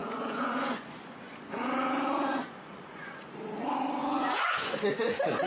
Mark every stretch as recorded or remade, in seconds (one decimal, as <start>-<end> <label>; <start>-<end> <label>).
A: 0.0-3.3 remade; 3.3-4.0 recorded; 4.0-4.9 remade; 4.9-5.5 recorded